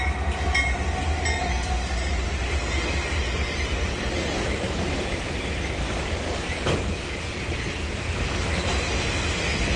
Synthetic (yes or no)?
no